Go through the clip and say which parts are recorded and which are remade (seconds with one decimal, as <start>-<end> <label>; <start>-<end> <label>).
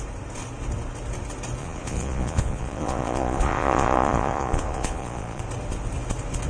0.0-1.6 recorded; 1.6-5.4 remade; 5.4-6.5 recorded